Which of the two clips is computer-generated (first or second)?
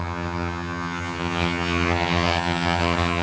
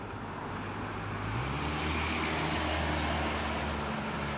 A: first